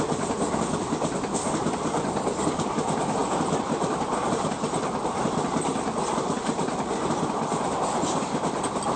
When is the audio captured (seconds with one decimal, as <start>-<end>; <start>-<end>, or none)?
0.0-9.0